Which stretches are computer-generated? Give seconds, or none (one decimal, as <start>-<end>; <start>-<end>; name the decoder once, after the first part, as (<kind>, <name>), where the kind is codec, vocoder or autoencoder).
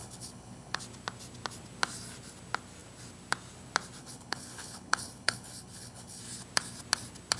0.0-0.8 (codec, HILCodec); 4.0-6.2